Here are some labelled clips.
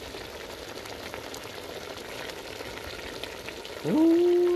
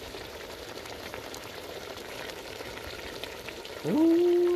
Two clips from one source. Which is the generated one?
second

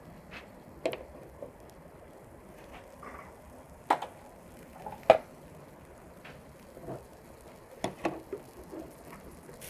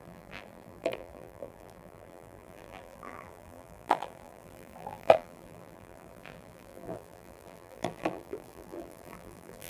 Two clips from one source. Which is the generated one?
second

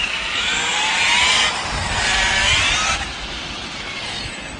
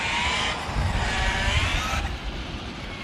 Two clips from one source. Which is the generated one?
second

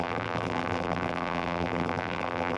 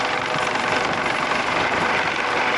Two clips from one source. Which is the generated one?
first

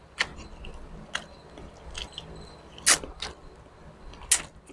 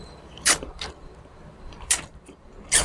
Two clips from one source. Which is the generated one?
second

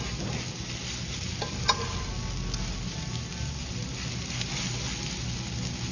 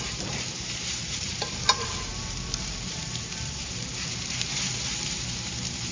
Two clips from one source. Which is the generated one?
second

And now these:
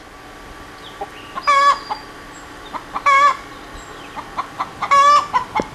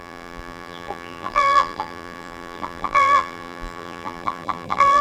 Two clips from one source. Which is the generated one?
second